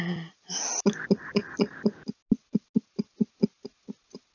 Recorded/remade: recorded